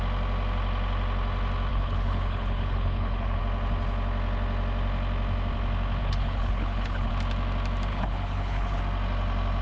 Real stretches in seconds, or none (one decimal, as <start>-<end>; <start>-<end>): 0.0-1.7; 3.4-6.0; 7.1-7.9; 8.8-9.6